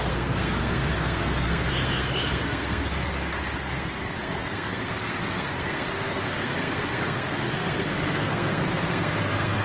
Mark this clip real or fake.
fake